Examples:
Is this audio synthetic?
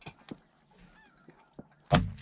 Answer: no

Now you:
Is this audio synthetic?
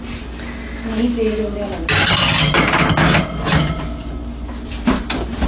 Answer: no